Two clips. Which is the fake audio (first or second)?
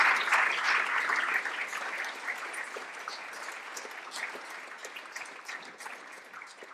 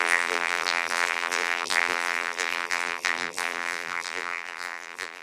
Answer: second